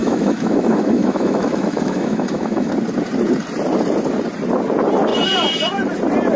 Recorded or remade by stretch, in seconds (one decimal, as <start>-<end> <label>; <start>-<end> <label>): 0.0-2.7 remade; 2.7-6.4 recorded